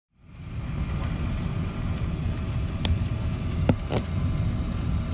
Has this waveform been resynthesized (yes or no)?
no